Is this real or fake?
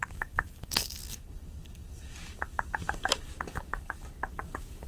fake